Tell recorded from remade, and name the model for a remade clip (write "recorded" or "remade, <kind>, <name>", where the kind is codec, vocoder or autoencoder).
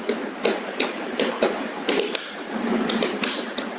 remade, vocoder, BigVGAN v2